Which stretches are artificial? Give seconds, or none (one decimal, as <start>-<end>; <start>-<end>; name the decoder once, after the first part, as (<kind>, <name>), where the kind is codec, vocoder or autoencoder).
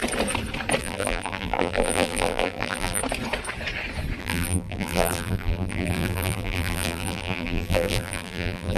0.8-3.0 (vocoder, BigVGAN v2); 4.2-8.8